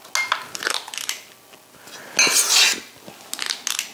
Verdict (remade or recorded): recorded